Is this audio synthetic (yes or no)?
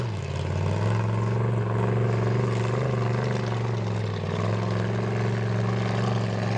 no